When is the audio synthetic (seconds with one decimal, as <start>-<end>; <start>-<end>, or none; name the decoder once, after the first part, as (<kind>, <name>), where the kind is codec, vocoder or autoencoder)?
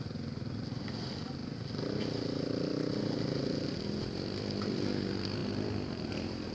none